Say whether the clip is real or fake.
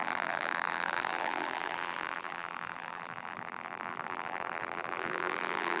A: fake